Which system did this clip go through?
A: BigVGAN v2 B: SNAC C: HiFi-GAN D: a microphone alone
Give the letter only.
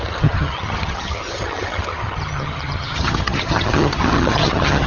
C